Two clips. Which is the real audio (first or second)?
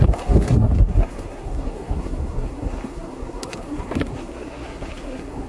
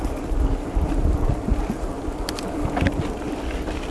second